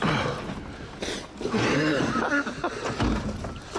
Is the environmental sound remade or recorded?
recorded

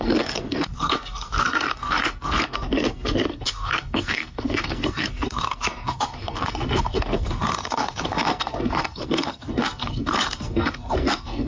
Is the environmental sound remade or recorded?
remade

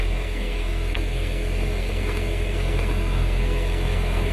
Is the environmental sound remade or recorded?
remade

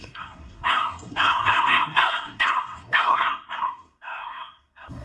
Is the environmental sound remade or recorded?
remade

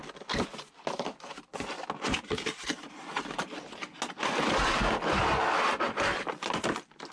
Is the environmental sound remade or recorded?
recorded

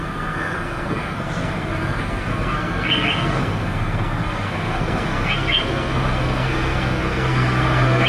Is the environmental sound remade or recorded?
remade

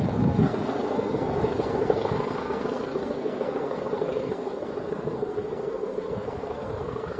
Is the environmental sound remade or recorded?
remade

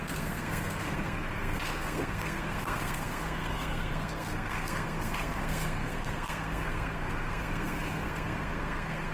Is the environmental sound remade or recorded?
remade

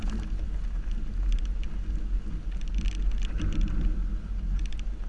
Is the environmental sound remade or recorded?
recorded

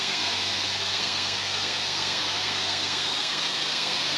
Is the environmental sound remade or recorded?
remade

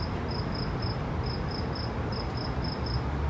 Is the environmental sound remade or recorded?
recorded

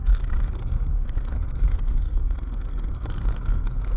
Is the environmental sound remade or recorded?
remade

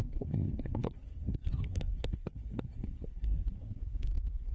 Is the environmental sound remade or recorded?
remade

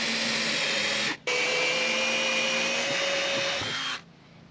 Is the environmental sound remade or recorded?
recorded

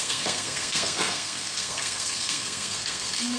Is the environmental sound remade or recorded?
remade